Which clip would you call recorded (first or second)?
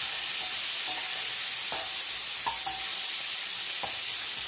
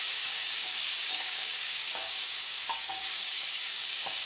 first